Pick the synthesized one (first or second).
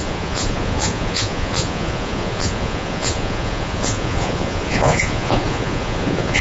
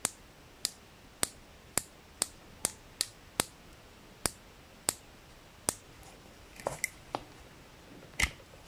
first